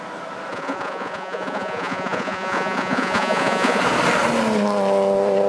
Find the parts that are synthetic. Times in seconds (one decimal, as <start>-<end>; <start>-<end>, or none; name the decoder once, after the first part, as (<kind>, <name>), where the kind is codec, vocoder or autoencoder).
0.5-3.8 (vocoder, Vocos)